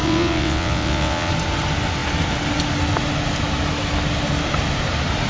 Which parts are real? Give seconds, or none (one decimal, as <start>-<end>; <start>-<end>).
1.3-5.3